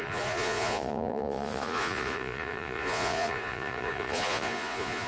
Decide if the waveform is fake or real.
fake